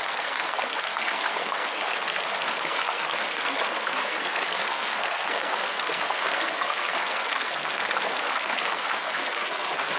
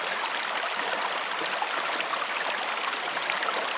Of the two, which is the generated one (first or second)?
first